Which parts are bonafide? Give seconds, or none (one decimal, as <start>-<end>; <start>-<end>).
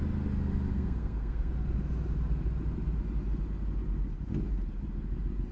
0.0-0.7; 1.5-5.5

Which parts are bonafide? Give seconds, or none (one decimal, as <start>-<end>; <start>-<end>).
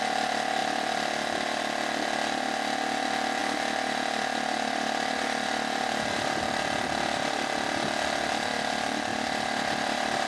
0.0-0.6; 1.6-3.4; 6.4-9.1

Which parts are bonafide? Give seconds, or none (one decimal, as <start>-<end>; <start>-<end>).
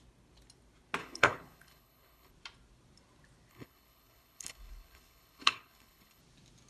0.0-1.0; 2.3-3.5; 6.2-6.7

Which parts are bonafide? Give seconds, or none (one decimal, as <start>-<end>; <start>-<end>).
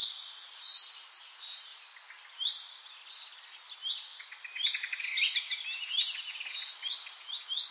1.0-1.7; 3.1-4.1; 5.0-7.7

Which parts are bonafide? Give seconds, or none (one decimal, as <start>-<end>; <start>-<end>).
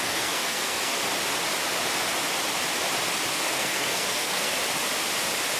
1.0-3.3; 4.5-5.6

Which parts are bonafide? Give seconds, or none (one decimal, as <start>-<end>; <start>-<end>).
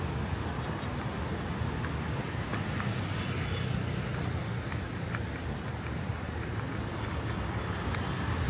0.0-8.5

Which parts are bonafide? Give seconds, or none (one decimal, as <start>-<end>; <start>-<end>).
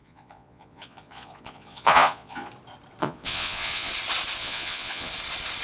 2.5-3.0; 3.9-4.4; 5.1-5.6